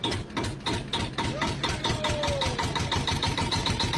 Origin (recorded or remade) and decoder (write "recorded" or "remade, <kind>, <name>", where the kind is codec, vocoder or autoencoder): recorded